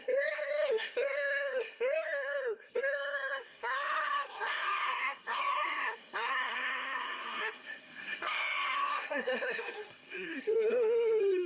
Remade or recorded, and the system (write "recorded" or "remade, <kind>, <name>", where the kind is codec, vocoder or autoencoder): remade, codec, SNAC